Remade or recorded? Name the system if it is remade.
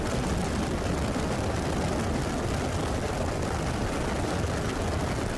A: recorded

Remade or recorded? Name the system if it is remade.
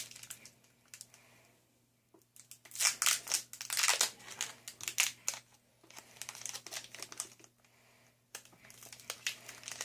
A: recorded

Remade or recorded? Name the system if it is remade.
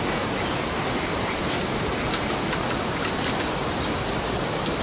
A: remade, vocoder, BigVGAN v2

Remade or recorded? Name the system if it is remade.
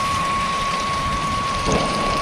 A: remade, vocoder, BigVGAN v2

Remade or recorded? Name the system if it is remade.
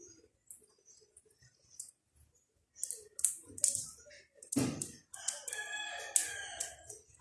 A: recorded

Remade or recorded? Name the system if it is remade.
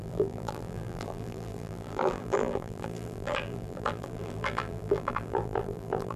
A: remade, vocoder, BigVGAN v2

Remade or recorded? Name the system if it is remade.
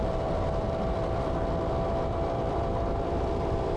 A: remade, vocoder, BigVGAN v2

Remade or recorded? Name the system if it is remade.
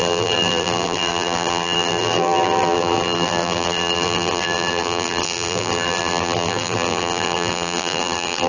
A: remade, vocoder, BigVGAN v2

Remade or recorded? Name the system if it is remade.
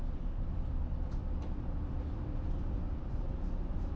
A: remade, vocoder, BigVGAN v2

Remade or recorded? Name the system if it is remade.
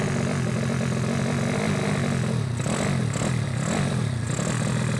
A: recorded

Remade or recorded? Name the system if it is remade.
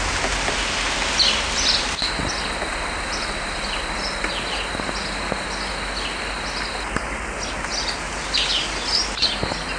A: recorded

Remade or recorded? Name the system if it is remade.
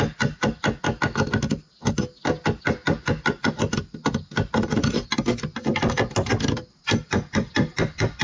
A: recorded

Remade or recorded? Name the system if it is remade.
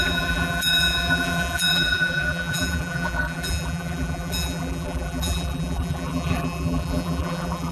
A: remade, vocoder, BigVGAN v2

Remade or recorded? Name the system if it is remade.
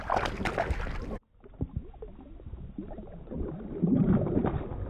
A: recorded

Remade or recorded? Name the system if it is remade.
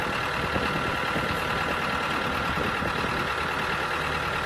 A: recorded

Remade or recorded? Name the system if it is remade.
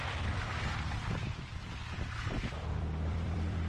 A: remade, vocoder, BigVGAN v2